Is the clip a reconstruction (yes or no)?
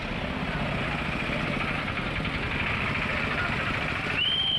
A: no